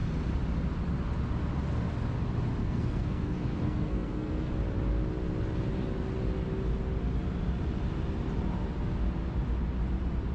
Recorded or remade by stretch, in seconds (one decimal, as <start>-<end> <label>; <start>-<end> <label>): 0.0-2.6 recorded; 2.6-4.5 remade; 4.5-10.3 recorded